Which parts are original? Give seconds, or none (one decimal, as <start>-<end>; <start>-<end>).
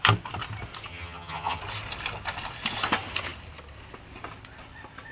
0.0-0.9; 1.6-5.1